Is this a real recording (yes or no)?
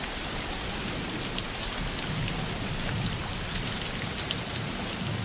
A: yes